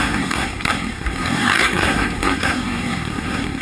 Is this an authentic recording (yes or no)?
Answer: no